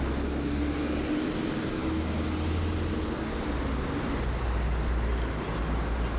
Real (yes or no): yes